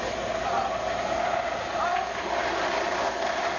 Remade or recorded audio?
recorded